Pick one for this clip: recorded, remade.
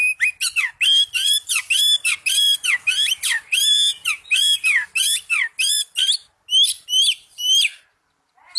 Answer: recorded